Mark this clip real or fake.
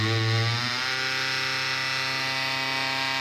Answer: real